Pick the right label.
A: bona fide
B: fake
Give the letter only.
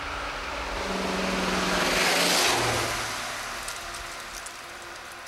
A